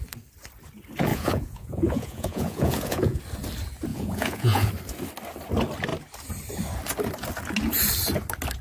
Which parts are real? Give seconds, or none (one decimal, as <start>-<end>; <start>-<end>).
0.0-1.1; 3.2-3.9; 4.7-8.6